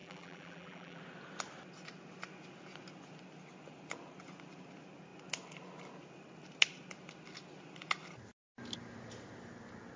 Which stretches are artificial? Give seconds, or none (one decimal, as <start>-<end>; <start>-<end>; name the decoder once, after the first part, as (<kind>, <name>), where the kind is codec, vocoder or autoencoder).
0.0-1.0 (vocoder, BigVGAN v2)